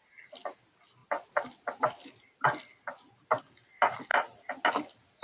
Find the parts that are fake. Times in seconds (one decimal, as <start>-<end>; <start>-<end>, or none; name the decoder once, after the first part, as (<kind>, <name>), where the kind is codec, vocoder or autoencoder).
none